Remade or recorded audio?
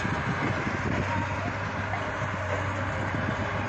recorded